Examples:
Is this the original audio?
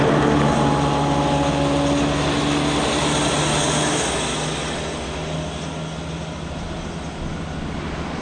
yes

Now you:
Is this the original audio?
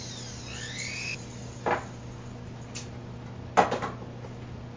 yes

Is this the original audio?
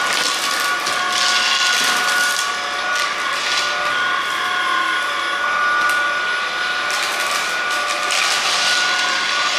yes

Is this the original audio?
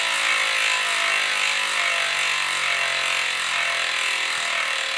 yes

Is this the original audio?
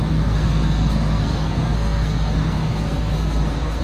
no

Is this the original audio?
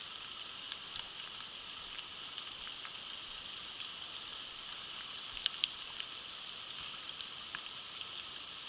yes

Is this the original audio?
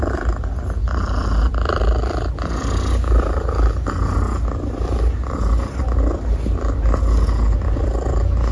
yes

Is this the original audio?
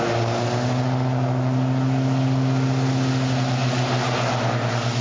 yes